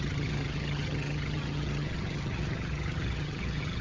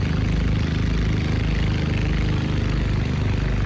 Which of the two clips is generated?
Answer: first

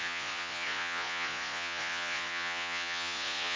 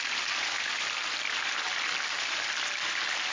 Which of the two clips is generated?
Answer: first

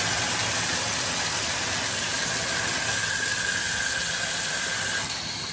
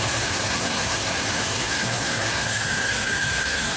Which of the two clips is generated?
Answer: second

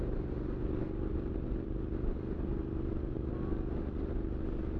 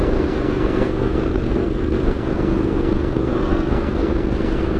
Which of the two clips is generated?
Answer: second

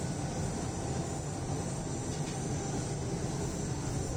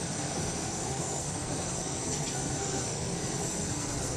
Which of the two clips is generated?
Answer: second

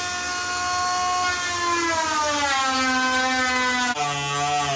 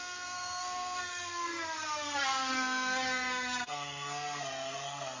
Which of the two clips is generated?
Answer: second